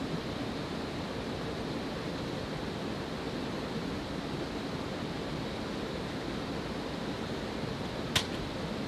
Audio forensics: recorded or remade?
recorded